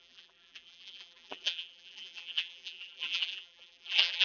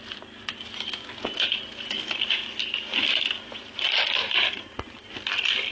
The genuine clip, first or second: second